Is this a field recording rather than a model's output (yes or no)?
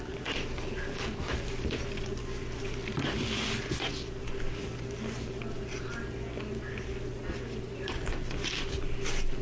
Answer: yes